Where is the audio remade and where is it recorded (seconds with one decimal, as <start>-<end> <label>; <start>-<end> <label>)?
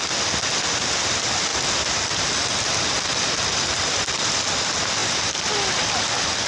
0.0-6.5 recorded